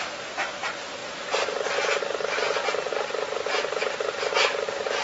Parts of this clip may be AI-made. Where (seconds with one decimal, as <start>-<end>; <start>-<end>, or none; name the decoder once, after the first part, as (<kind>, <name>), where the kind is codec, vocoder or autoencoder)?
none